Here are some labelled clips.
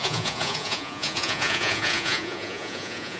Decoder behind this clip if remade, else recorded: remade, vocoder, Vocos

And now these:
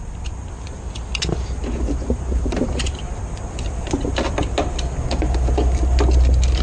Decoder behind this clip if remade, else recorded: recorded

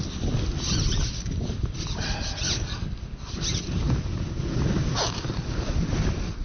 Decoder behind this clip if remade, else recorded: recorded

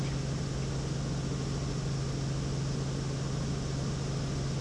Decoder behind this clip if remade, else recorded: recorded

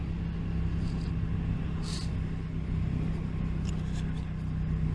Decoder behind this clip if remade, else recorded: recorded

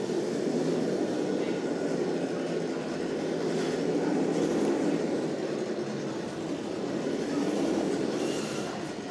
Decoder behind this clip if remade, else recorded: recorded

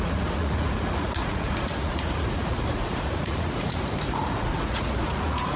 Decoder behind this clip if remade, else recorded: remade, vocoder, Vocos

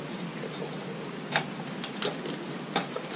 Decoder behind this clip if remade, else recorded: recorded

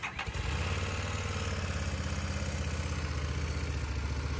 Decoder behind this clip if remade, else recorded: recorded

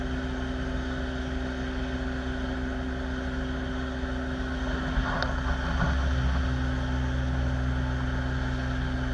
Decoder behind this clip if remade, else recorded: recorded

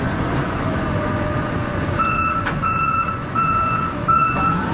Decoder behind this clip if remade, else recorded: remade, vocoder, Vocos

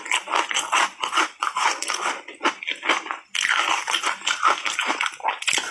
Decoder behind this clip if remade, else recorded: recorded